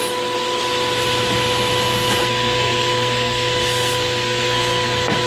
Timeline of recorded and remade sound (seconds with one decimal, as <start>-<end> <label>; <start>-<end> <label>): 0.0-2.2 recorded; 2.2-5.3 remade